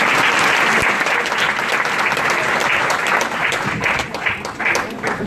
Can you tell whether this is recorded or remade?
recorded